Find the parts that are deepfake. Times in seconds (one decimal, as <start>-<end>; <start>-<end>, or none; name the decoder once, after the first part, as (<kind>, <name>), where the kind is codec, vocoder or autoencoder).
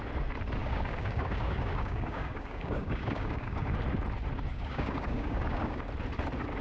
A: 0.6-3.7 (codec, DAC); 4.5-5.9